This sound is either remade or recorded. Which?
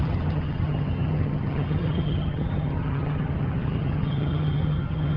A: remade